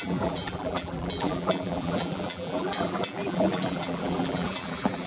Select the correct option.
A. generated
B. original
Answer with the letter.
A